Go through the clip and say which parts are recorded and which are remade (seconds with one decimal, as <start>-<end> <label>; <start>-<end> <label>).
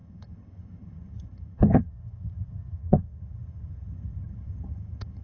0.0-5.2 remade